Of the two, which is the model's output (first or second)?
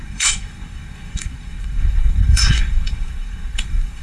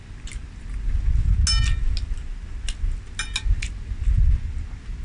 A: first